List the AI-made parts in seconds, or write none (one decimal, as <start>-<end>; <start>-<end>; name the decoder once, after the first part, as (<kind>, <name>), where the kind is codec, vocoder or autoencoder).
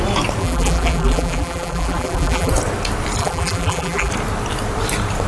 0.4-2.5 (vocoder, BigVGAN v2); 3.2-4.1